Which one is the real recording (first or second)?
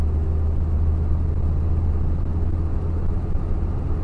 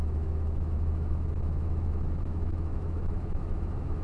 first